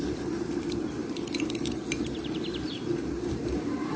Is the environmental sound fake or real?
fake